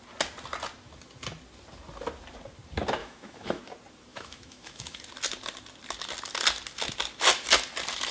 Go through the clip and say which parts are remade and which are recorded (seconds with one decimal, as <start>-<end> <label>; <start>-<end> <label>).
0.0-3.0 recorded; 3.0-3.6 remade; 3.6-4.1 recorded; 4.1-5.0 remade; 5.0-8.1 recorded